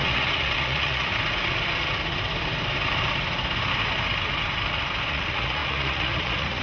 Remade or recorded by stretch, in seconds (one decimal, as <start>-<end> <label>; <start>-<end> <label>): 0.0-1.1 remade; 1.1-5.1 recorded; 5.1-6.6 remade